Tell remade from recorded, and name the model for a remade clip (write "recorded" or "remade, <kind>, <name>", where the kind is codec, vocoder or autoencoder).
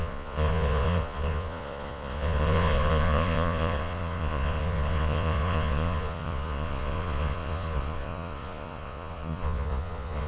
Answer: remade, vocoder, Vocos